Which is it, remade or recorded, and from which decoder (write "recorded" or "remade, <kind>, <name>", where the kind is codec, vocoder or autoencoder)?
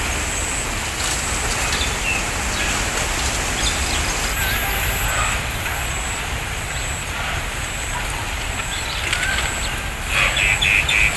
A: recorded